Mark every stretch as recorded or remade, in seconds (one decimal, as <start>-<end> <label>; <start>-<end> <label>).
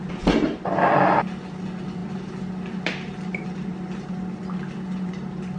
0.0-5.6 recorded